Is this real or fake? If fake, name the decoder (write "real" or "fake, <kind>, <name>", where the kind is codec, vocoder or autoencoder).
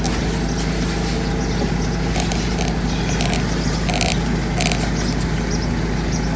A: real